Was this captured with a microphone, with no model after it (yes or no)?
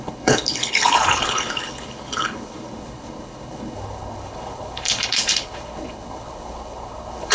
no